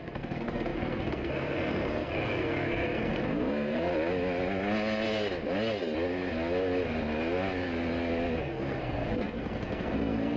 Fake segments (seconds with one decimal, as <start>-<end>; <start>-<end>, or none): 0.0-3.9; 8.4-10.4